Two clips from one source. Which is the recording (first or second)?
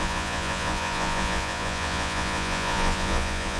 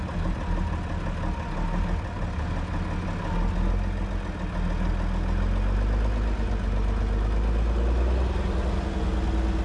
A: second